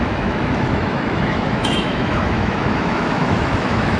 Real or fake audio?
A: fake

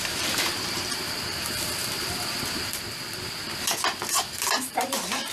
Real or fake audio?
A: fake